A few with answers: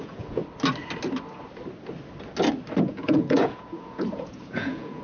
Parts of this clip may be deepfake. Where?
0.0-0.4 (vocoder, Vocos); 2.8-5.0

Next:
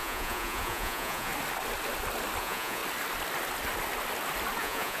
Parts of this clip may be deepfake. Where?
0.0-1.3 (vocoder, Vocos); 2.4-2.8; 4.6-5.0